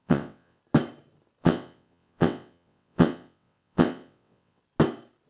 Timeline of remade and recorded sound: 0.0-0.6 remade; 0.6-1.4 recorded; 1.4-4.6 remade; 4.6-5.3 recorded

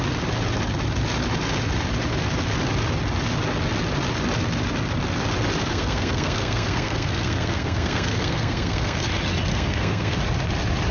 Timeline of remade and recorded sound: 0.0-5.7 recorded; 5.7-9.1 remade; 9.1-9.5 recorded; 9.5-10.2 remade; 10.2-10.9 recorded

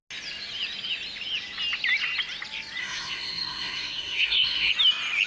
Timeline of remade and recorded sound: 0.0-2.8 recorded; 2.8-4.7 remade; 4.7-5.3 recorded